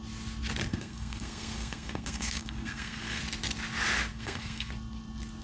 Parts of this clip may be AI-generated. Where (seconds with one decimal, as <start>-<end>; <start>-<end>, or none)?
0.7-3.2; 4.1-4.7